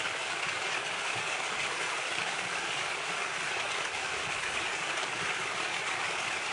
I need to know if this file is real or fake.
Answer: fake